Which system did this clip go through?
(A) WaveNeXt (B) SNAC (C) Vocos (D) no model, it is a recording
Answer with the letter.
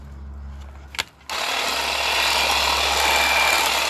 D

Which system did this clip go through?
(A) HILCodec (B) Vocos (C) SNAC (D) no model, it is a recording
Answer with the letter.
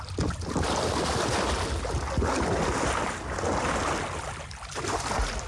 D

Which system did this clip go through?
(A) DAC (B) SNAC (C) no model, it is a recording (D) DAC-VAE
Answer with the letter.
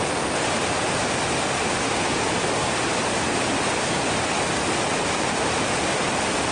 C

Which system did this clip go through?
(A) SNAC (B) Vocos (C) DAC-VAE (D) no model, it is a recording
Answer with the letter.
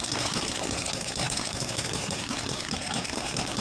A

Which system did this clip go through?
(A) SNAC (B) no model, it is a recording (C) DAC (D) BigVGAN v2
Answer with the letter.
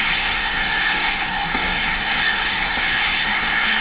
A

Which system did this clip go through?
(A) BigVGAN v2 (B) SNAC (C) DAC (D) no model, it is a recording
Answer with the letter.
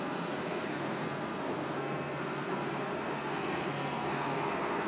B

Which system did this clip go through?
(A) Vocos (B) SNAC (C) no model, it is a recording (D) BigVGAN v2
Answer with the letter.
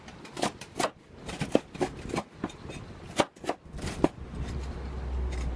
C